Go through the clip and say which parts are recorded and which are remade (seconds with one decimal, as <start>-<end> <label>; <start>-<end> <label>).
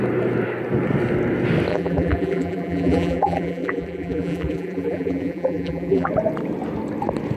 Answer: 0.0-1.7 recorded; 1.7-6.1 remade; 6.1-7.4 recorded